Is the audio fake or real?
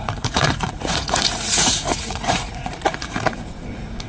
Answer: fake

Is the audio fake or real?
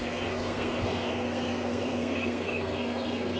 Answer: fake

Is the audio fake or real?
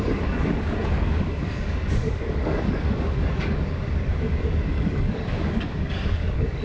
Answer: fake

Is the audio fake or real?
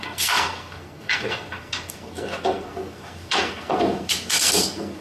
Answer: fake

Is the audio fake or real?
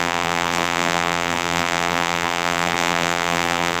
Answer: fake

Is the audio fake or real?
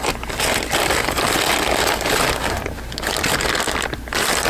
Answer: real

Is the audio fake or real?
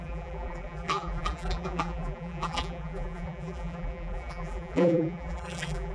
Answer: fake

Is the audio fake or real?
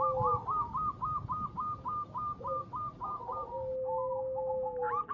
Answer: real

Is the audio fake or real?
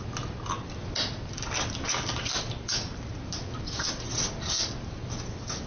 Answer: real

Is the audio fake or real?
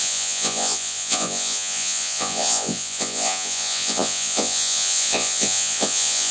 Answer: fake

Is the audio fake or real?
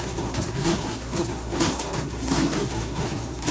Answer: fake